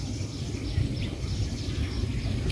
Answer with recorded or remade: recorded